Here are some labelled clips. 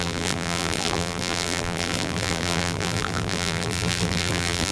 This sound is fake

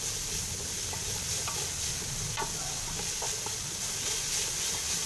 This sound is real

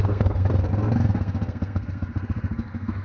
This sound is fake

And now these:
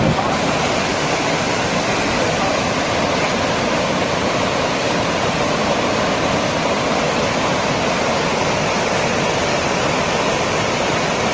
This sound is fake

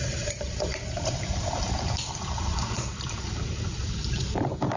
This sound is fake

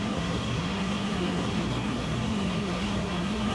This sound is fake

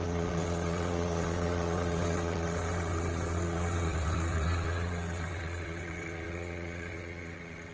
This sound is fake